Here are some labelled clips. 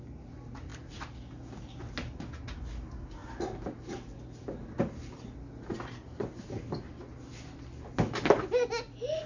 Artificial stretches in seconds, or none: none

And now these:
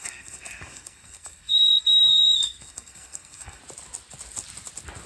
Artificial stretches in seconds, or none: 0.0-3.6 (codec, SNAC)

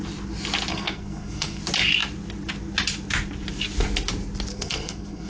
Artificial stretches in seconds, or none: 0.7-1.6 (codec, SNAC); 4.5-5.3

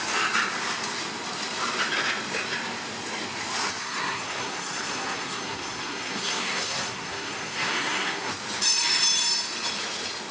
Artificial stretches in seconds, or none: 3.8-8.3 (codec, SNAC)

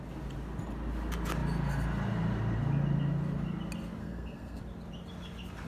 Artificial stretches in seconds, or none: 4.0-4.6 (codec, SNAC)

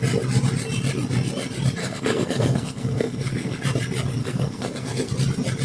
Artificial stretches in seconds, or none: 1.8-3.6 (codec, SNAC); 4.2-5.1

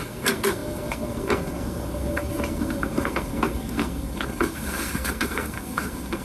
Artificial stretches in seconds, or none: 0.0-6.2 (codec, SNAC)